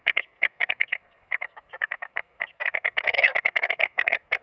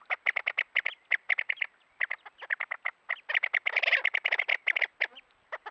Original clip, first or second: second